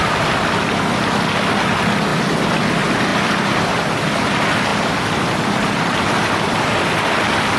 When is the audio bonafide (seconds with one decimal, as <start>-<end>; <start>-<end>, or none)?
0.0-4.7; 6.3-7.6